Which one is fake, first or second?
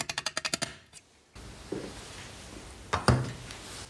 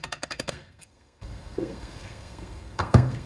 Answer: second